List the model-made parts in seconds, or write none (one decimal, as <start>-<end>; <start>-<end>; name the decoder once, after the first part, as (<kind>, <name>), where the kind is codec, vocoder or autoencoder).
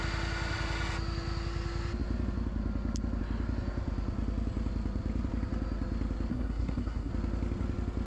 6.3-7.1 (codec, SNAC)